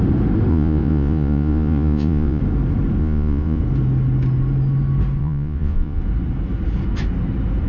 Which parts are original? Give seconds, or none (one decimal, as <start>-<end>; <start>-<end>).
0.0-0.5; 2.4-3.0; 3.6-5.2; 6.0-7.7